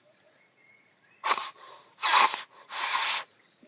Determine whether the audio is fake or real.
fake